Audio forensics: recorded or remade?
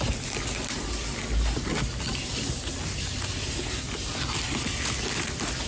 recorded